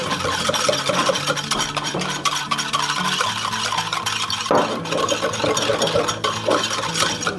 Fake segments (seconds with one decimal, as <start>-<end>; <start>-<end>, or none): 0.0-4.4